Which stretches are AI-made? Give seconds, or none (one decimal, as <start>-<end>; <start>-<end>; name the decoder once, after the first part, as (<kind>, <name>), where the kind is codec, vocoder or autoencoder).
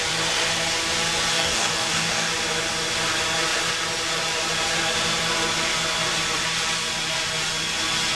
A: 1.3-2.3 (codec, DAC)